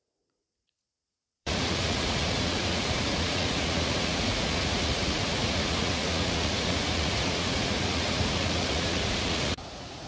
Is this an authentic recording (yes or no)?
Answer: no